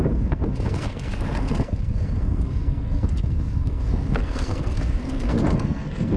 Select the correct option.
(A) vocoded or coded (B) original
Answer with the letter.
A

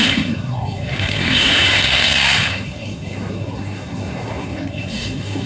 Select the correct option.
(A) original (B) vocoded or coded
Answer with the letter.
B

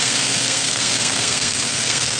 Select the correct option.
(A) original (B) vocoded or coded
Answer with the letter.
B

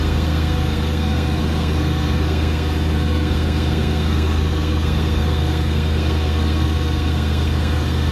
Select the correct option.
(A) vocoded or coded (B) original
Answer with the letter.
A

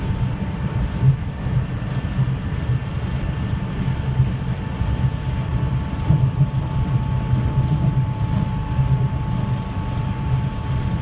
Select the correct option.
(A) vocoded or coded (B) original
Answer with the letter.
B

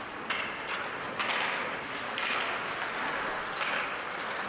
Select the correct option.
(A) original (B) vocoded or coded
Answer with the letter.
A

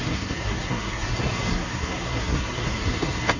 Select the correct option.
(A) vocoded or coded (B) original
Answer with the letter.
A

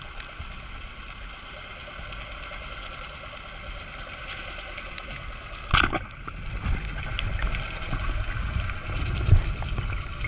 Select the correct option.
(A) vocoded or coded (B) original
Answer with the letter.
B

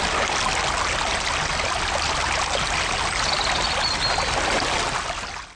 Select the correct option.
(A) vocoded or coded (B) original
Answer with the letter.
B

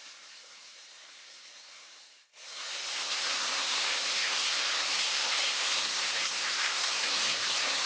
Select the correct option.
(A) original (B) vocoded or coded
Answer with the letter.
B